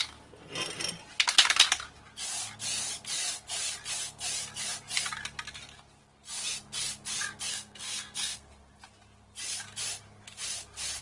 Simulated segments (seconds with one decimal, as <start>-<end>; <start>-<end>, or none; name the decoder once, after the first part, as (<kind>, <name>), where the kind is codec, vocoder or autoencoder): 7.5-8.5 (codec, SNAC)